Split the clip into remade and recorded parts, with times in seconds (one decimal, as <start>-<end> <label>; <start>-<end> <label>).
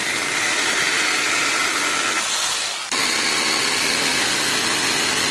0.0-1.7 remade; 1.7-5.3 recorded